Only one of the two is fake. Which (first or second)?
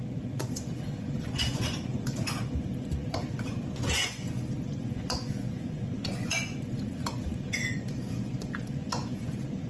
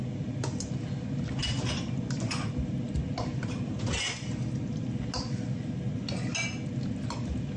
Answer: first